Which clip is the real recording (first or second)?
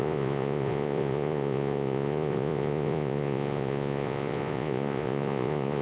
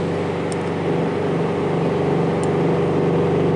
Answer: second